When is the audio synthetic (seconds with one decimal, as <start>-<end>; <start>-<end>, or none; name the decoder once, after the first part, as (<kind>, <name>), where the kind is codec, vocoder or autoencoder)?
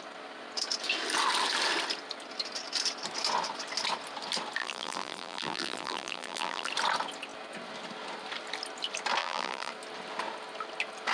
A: 4.6-6.7 (vocoder, BigVGAN v2); 9.2-9.7